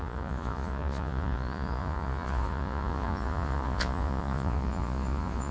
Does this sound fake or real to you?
fake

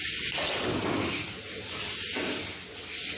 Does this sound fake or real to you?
real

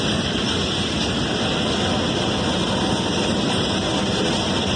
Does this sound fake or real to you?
real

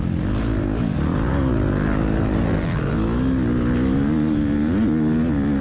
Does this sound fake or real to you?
real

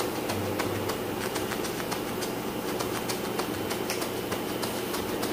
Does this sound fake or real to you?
real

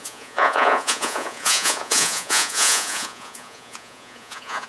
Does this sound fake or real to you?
fake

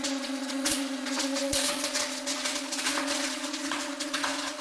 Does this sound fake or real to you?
fake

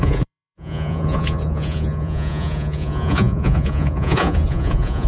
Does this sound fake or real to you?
fake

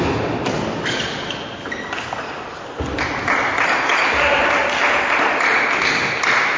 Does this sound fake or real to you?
real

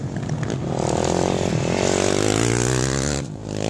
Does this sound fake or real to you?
real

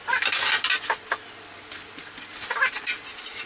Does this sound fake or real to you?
real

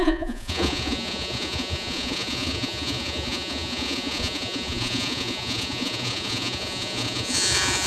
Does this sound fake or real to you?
fake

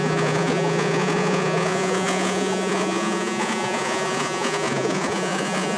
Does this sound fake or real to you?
fake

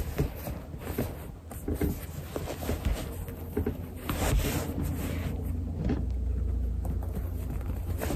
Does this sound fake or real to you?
real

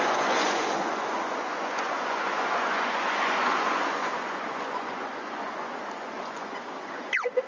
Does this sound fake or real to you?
fake